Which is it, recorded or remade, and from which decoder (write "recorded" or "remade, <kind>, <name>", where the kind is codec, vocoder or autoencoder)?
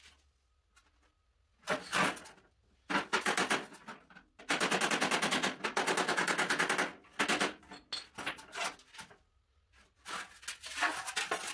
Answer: recorded